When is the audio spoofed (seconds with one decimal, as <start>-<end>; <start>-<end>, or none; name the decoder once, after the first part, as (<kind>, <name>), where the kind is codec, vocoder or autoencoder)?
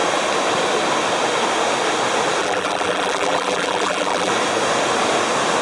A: 2.4-4.3 (vocoder, BigVGAN v2)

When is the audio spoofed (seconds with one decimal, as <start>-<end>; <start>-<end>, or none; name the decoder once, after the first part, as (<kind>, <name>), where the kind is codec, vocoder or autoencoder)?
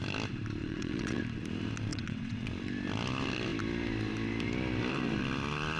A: 0.6-1.2 (vocoder, WaveNeXt); 1.9-2.5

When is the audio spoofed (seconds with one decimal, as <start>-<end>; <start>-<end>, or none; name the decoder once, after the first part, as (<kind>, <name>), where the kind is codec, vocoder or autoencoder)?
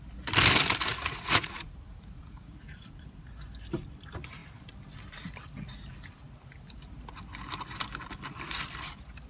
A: 0.9-3.3 (vocoder, Vocos)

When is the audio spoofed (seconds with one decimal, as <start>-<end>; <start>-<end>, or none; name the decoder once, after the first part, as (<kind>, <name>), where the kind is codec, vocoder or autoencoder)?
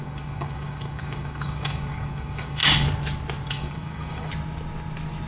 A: 0.0-2.6 (codec, DAC); 3.5-4.3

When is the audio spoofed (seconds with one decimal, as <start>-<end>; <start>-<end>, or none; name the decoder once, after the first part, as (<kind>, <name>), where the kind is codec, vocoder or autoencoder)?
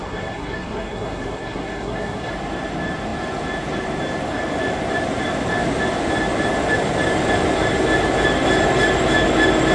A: 0.0-2.3 (codec, SNAC)